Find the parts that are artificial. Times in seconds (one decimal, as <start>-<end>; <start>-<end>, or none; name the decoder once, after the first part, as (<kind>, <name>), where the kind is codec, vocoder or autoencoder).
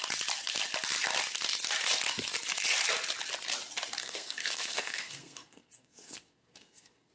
4.0-7.1 (codec, SNAC)